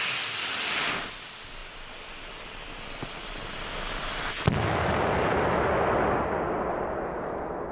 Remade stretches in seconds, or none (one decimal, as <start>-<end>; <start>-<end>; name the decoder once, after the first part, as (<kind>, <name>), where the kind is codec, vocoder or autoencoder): none